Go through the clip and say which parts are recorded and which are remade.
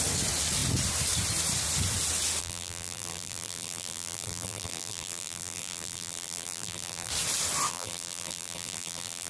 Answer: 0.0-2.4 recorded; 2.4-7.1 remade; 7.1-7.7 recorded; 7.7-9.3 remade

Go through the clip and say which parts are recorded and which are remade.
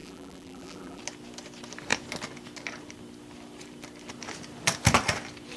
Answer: 0.0-1.0 remade; 1.0-5.6 recorded